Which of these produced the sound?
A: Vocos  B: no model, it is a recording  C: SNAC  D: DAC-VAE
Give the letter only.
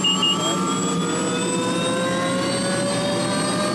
B